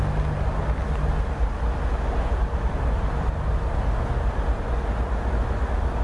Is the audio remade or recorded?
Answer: recorded